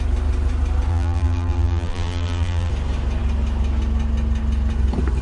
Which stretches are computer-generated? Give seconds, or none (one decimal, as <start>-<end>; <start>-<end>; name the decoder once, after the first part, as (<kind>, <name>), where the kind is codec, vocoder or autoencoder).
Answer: 0.9-2.7 (vocoder, BigVGAN v2)